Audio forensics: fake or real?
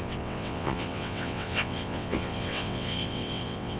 fake